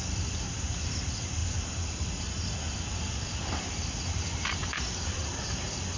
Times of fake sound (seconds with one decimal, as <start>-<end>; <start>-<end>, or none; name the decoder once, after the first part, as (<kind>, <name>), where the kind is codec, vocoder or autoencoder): none